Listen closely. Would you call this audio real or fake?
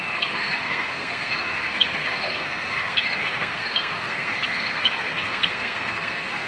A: fake